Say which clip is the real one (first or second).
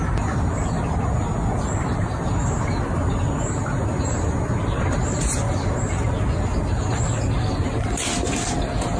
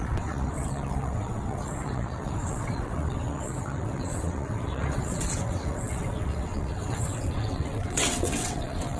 first